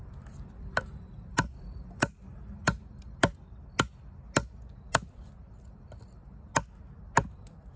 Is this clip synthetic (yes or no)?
no